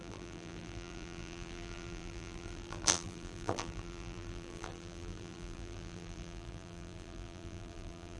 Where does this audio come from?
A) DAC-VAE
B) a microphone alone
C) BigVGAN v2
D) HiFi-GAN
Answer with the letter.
C